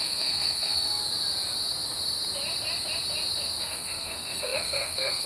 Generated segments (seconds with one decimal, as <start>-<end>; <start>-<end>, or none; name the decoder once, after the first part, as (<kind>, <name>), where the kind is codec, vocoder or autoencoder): 0.0-1.0 (codec, SNAC); 3.6-5.3